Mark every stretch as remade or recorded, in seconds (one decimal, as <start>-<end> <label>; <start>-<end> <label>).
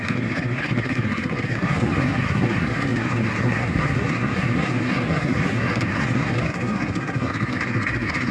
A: 0.0-8.3 remade